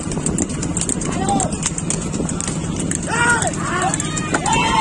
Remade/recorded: recorded